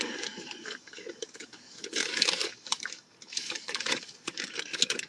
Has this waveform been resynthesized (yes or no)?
yes